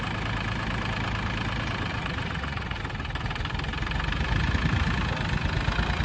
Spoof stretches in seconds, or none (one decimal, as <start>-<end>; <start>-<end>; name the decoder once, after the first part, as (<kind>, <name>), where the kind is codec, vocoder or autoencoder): 1.9-2.8 (vocoder, Vocos)